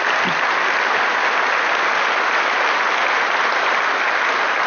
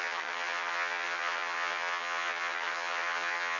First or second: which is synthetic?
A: second